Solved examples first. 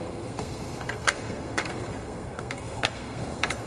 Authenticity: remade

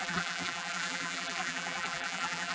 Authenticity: remade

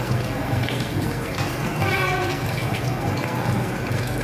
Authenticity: remade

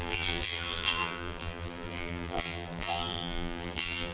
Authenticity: remade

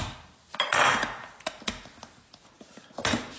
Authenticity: recorded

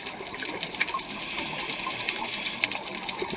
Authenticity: recorded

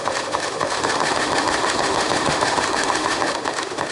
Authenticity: remade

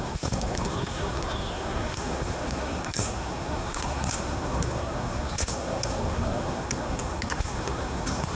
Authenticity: remade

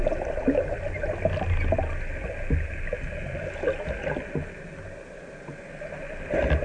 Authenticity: recorded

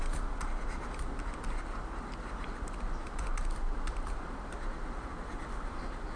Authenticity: remade